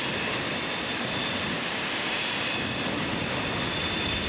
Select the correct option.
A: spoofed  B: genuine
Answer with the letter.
B